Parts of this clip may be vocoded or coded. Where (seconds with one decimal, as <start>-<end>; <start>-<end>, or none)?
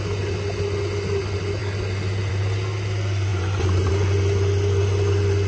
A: none